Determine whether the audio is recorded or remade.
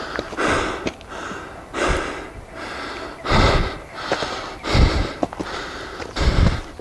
recorded